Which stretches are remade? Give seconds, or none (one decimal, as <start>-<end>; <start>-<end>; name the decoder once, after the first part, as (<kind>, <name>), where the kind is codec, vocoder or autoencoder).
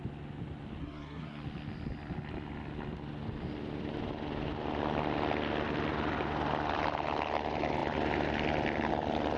0.8-1.4 (codec, SNAC)